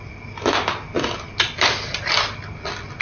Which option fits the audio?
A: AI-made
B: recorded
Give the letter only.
B